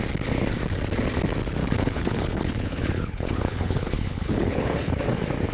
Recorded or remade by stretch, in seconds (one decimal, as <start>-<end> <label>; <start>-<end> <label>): 0.0-1.6 recorded; 1.6-4.9 remade; 4.9-5.5 recorded